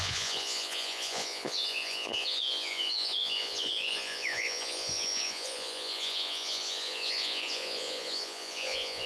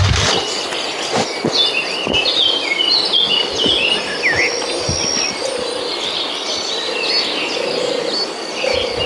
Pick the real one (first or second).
second